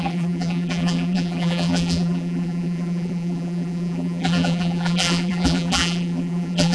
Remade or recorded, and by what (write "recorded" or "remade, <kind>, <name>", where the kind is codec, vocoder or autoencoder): remade, vocoder, BigVGAN v2